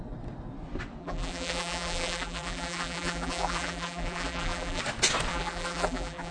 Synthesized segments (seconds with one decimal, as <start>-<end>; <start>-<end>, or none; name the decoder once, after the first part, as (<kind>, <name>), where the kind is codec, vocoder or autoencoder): 1.0-4.8 (vocoder, BigVGAN v2); 5.3-6.3